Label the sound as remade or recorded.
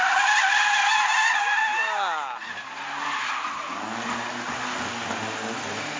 recorded